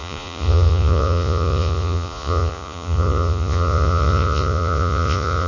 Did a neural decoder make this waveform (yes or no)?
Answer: yes